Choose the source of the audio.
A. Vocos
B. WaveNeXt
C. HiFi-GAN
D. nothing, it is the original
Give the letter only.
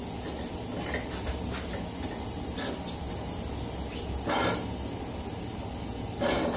D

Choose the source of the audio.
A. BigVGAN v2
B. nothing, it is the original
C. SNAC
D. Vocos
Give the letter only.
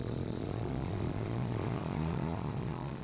D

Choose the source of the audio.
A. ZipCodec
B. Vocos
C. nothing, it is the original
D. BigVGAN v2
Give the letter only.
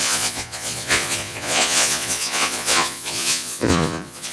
B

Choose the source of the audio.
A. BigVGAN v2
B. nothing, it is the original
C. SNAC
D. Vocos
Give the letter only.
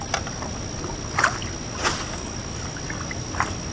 B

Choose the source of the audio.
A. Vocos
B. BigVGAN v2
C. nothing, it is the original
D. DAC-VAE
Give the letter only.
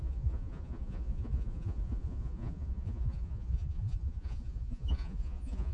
A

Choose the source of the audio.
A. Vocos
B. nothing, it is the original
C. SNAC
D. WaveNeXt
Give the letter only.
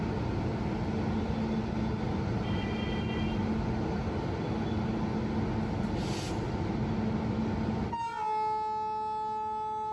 B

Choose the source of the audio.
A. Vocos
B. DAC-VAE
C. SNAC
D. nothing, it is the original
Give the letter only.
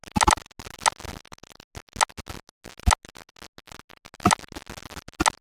D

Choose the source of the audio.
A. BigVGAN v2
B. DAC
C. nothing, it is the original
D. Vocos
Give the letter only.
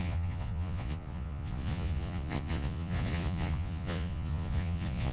D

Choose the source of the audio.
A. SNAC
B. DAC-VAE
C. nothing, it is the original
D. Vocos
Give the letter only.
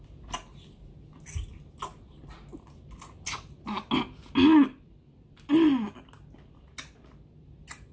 C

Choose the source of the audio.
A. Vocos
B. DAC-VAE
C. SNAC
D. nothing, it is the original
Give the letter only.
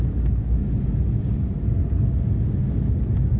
D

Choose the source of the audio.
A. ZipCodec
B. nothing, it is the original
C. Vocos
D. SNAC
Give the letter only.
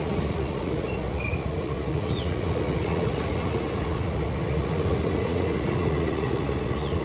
C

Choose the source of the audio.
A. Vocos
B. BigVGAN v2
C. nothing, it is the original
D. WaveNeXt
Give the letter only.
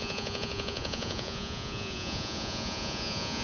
A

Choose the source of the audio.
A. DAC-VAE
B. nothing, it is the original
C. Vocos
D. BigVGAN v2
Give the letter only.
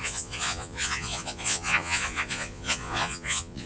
C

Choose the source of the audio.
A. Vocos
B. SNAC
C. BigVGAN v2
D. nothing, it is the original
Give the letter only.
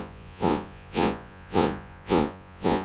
A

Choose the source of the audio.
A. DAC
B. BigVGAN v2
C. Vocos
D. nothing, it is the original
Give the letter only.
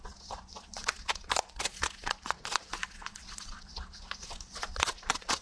C